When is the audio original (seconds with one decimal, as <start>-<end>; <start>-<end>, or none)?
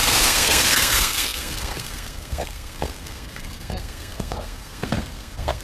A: none